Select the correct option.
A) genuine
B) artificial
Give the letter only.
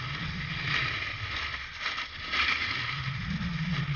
A